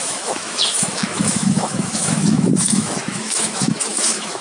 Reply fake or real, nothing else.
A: fake